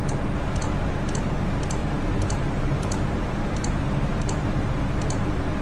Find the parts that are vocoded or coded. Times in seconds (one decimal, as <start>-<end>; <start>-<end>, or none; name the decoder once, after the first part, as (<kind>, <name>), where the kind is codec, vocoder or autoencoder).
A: 1.8-4.7 (vocoder, BigVGAN v2)